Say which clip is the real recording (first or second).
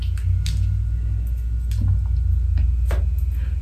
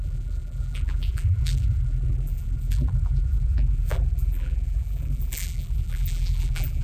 first